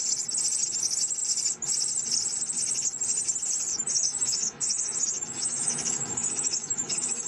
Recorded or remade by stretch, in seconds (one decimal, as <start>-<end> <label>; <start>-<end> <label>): 0.0-3.7 recorded; 3.7-7.3 remade